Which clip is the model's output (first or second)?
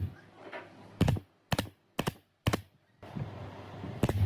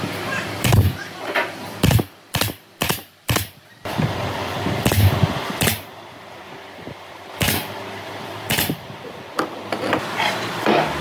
second